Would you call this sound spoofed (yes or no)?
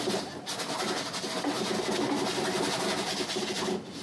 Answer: no